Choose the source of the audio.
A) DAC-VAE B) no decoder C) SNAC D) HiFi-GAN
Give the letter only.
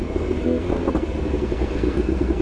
C